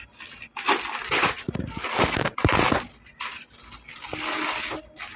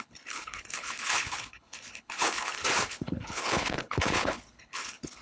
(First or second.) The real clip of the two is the first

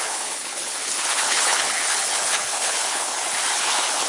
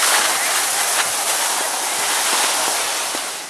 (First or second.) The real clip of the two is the second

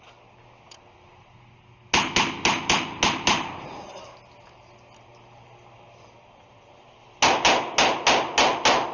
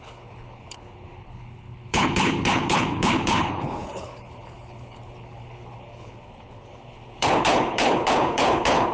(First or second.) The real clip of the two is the first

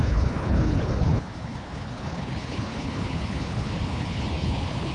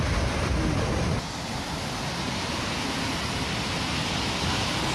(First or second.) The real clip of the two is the second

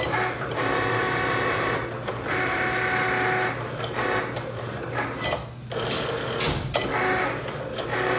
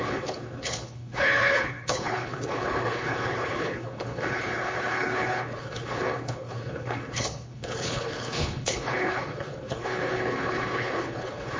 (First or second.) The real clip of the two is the first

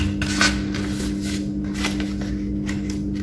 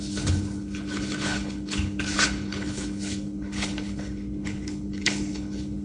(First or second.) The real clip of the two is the first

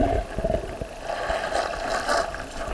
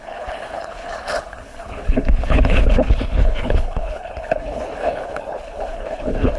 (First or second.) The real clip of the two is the first